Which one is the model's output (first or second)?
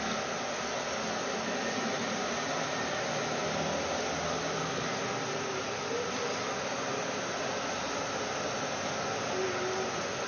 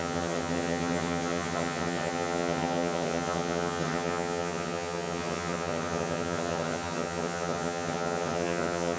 second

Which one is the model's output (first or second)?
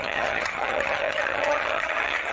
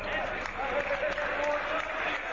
first